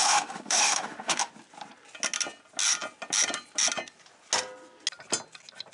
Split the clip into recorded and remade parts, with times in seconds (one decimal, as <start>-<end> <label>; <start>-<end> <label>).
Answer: 0.0-1.3 remade; 1.3-5.7 recorded